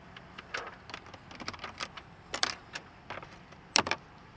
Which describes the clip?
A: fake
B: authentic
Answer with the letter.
A